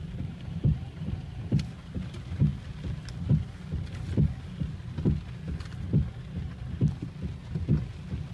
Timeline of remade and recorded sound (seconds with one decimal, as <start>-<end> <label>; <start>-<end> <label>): 0.0-2.5 remade; 2.5-6.9 recorded; 6.9-7.4 remade; 7.4-8.3 recorded